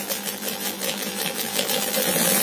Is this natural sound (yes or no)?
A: no